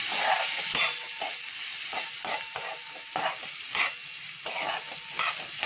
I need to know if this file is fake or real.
real